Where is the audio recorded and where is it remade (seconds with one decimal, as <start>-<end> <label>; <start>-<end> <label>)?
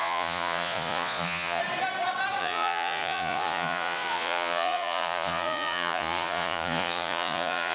0.0-1.6 remade; 1.6-2.4 recorded; 2.4-7.7 remade